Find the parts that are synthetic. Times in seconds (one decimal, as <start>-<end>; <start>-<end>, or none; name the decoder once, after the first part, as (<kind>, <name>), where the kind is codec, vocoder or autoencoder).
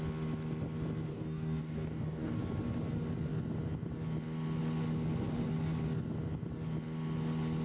1.1-2.4 (codec, DAC)